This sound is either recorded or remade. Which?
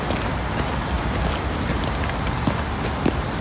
recorded